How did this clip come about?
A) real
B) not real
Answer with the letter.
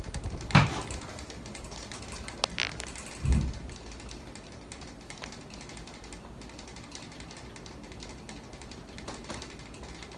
A